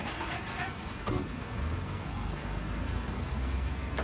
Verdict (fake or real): fake